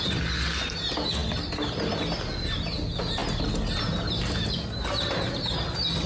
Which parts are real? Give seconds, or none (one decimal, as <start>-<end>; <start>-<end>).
0.0-6.1